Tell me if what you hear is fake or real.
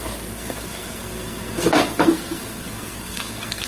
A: fake